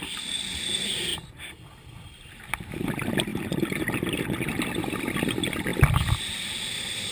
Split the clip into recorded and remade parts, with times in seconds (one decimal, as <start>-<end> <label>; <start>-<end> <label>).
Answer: 0.0-3.3 recorded; 3.3-4.2 remade; 4.2-5.7 recorded; 5.7-7.1 remade